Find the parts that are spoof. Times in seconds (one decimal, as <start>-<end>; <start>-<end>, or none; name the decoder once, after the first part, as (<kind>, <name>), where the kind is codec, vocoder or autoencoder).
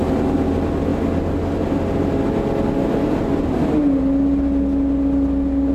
none